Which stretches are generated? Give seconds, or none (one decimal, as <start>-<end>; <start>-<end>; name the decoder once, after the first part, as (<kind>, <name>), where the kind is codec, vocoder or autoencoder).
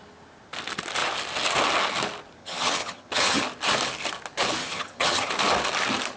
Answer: 2.4-3.4 (vocoder, HiFi-GAN); 4.6-5.3